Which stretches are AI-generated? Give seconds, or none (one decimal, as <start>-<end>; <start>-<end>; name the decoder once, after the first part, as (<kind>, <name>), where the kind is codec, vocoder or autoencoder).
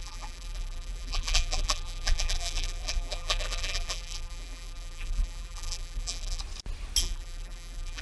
0.0-6.4 (vocoder, BigVGAN v2); 7.0-8.0